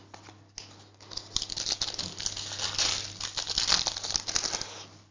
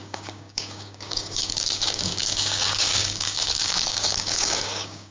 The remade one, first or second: second